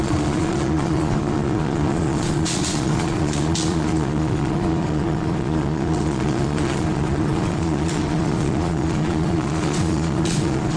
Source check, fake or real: fake